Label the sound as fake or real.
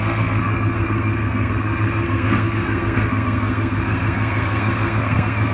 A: fake